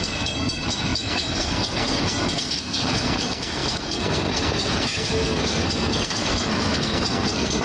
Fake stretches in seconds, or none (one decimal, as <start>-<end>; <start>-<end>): 0.0-7.6